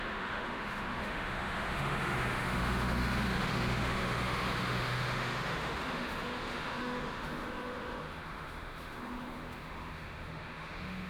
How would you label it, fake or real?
fake